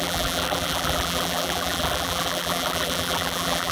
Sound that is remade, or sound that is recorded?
remade